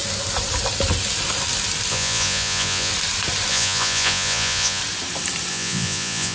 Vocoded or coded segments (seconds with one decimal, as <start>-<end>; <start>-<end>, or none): 1.9-2.9; 3.5-4.8; 5.5-6.3